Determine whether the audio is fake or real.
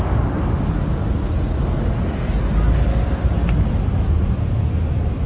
real